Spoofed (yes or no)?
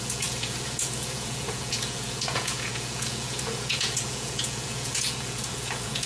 yes